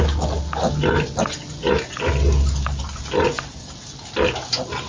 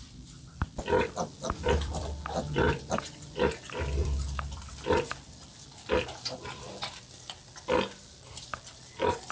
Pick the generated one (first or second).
second